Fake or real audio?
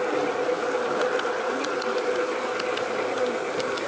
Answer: real